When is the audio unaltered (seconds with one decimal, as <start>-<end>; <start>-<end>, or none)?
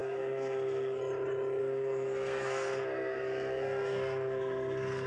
1.0-1.6